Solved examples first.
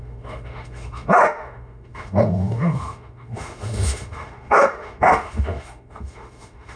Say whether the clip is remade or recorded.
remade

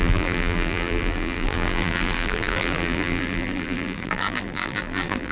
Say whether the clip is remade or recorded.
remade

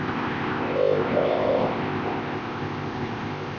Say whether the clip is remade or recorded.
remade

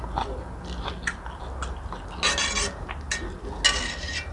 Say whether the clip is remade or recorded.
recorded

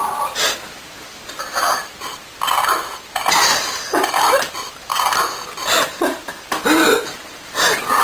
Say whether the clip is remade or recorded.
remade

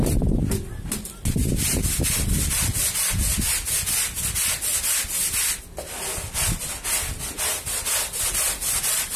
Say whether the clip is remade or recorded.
recorded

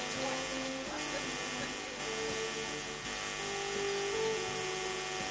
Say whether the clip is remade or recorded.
recorded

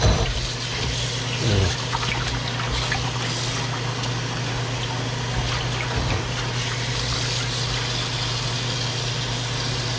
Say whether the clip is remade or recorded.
recorded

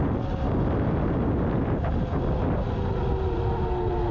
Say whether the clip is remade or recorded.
recorded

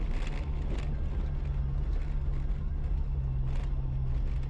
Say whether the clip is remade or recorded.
recorded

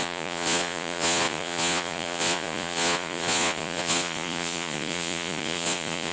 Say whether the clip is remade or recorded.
remade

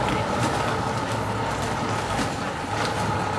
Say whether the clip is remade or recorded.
recorded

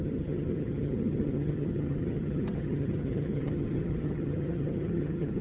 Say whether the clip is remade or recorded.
remade